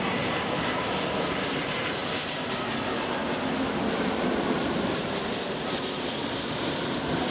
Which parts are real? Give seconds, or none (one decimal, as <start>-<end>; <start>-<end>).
2.0-3.9